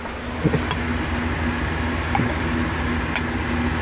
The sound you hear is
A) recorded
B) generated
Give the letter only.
A